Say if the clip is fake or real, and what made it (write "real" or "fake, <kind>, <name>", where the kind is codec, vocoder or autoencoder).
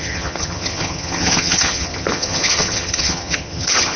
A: fake, vocoder, HiFi-GAN